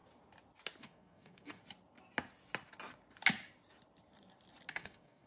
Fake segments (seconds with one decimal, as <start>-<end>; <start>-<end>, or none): 0.8-1.6; 4.7-5.3